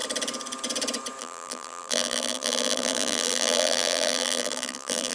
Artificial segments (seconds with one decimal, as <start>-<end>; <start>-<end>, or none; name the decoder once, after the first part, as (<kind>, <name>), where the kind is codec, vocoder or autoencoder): 1.2-5.1 (vocoder, BigVGAN v2)